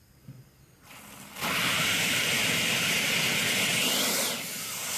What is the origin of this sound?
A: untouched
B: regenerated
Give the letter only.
A